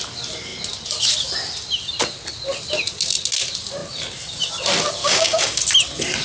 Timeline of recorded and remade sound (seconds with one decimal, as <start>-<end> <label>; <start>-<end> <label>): 0.0-5.0 recorded; 5.0-5.6 remade; 5.6-6.2 recorded